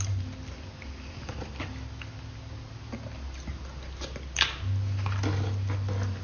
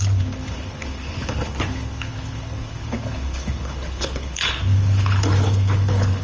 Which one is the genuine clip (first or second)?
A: first